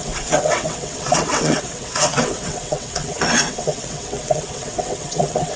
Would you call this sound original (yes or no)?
no